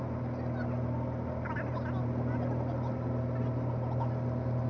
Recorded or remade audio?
recorded